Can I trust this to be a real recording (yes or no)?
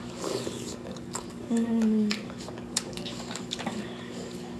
no